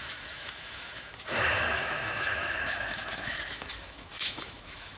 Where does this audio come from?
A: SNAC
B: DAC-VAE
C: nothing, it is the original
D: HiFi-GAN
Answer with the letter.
B